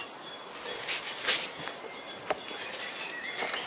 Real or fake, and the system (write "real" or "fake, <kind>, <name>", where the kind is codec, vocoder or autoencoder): real